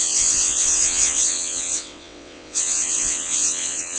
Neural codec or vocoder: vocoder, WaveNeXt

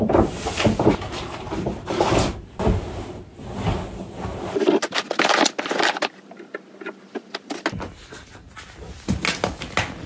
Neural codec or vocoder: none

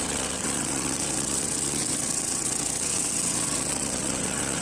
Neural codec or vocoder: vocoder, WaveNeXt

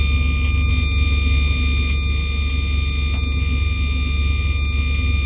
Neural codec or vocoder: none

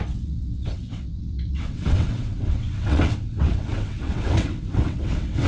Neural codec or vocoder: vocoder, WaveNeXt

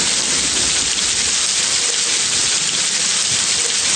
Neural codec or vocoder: none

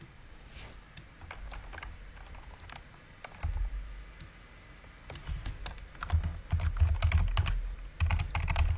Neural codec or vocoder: none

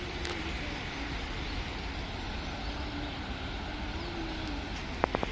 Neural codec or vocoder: none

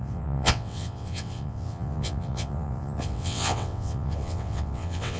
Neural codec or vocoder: vocoder, WaveNeXt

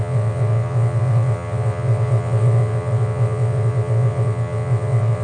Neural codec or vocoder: vocoder, WaveNeXt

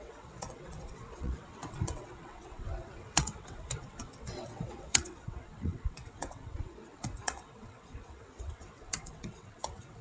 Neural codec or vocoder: vocoder, WaveNeXt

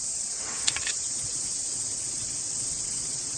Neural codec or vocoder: vocoder, WaveNeXt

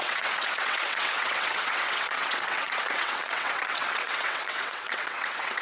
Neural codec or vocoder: vocoder, WaveNeXt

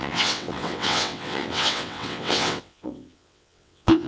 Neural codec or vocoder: vocoder, WaveNeXt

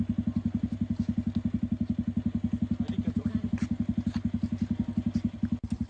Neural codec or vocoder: none